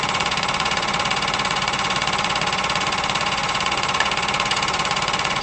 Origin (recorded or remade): remade